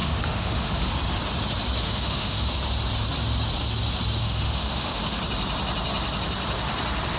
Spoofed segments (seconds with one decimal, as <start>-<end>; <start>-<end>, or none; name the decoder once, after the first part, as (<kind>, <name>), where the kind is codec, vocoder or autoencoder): 0.0-0.9 (autoencoder, DAC-VAE); 1.8-2.5; 4.2-5.2